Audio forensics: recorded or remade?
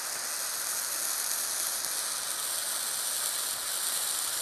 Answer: recorded